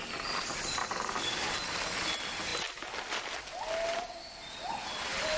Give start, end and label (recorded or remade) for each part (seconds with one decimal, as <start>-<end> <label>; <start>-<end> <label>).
0.0-0.8 recorded; 0.8-1.5 remade; 1.5-5.4 recorded